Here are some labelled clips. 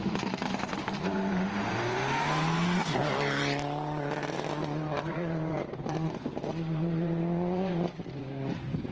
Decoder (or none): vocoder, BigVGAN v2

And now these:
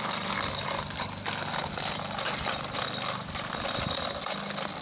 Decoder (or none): none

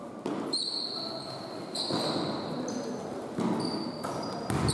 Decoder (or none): none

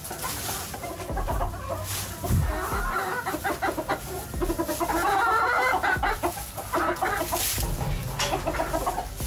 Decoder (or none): none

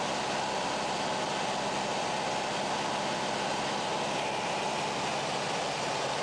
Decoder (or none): none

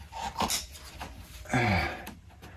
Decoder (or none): none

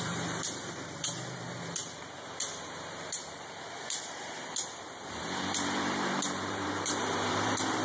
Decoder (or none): vocoder, BigVGAN v2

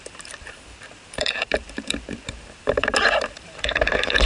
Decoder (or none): vocoder, BigVGAN v2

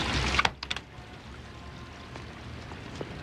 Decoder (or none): none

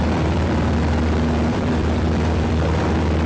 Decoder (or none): vocoder, BigVGAN v2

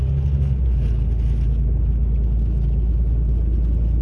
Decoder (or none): none